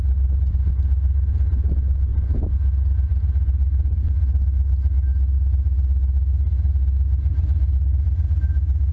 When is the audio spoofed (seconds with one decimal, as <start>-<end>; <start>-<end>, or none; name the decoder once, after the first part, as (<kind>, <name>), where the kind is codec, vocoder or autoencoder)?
none